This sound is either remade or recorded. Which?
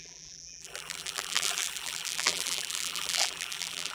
remade